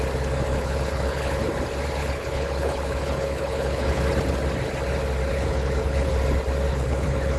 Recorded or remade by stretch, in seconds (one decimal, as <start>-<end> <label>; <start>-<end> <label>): 0.0-0.5 recorded; 0.5-1.5 remade; 1.5-2.0 recorded; 2.0-4.0 remade; 4.0-5.3 recorded; 5.3-6.1 remade; 6.1-6.7 recorded; 6.7-7.4 remade